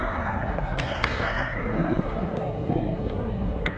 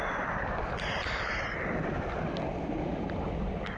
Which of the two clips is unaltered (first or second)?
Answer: second